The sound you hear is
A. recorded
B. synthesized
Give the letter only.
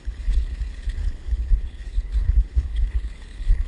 B